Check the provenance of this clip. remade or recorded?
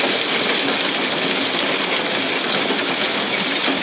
recorded